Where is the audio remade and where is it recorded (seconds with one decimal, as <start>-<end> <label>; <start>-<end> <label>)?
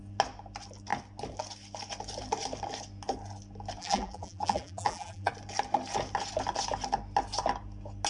0.0-3.8 recorded; 3.8-5.3 remade; 5.3-8.1 recorded